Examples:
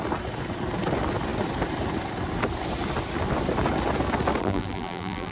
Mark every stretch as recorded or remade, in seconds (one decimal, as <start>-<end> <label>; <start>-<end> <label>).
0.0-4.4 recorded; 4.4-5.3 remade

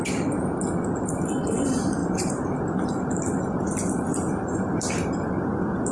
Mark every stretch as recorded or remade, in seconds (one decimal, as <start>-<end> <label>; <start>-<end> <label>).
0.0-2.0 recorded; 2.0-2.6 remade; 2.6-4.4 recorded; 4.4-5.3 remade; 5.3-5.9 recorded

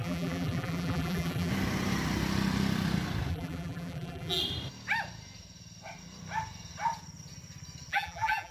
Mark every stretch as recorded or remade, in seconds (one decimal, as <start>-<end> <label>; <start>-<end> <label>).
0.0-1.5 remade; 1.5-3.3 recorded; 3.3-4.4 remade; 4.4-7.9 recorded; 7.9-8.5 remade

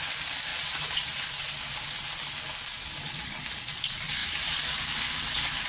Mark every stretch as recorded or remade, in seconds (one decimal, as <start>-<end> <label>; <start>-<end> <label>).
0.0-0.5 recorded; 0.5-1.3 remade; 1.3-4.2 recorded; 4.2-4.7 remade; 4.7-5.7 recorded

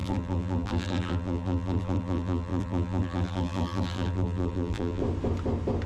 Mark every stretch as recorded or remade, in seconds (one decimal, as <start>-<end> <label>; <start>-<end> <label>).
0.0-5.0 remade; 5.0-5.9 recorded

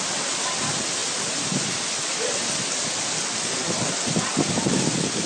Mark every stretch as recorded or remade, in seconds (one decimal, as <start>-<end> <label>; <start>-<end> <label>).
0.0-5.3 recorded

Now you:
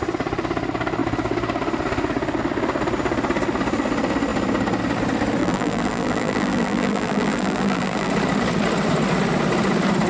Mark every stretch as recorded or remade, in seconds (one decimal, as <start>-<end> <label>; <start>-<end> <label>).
0.0-5.4 recorded; 5.4-8.1 remade; 8.1-10.1 recorded